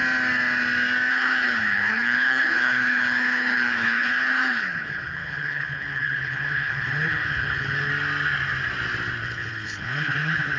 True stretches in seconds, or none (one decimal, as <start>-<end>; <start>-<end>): 0.0-1.1; 7.9-9.2